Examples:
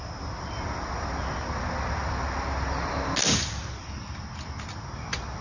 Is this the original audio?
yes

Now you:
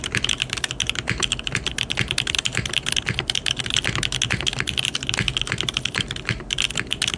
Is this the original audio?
yes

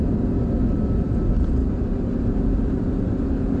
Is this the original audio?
no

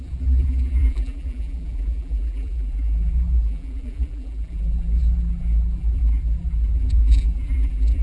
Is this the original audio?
no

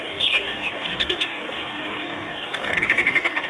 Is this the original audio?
no